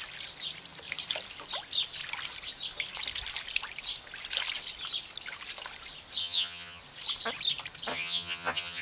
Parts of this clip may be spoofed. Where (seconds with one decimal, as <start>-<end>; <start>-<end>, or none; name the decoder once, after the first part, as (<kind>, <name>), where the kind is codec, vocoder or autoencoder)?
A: 6.2-6.8 (vocoder, HiFi-GAN); 7.9-8.8